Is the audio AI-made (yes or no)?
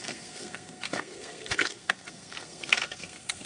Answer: yes